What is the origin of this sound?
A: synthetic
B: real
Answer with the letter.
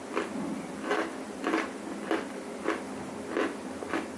B